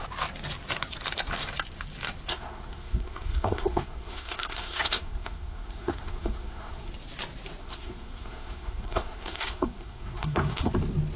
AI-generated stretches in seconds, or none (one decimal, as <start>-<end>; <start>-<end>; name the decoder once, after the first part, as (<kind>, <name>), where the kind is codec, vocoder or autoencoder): 2.3-6.9 (codec, SNAC); 7.6-10.7